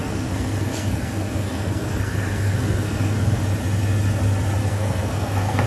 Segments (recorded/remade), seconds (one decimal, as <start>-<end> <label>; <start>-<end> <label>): 0.0-3.4 remade; 3.4-4.6 recorded; 4.6-5.7 remade